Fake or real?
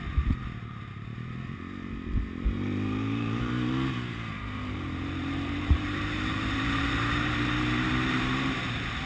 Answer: fake